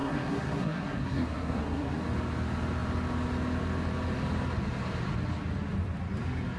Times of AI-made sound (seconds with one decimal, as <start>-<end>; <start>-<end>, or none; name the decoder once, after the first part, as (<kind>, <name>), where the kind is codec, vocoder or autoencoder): 0.0-2.0 (codec, SNAC)